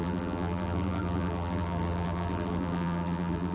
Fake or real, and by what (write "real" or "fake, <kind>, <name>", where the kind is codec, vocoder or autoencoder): fake, vocoder, BigVGAN v2